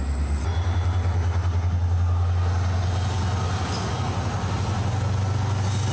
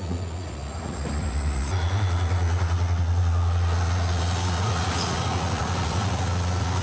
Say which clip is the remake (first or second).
second